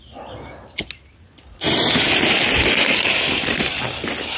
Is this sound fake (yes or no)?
no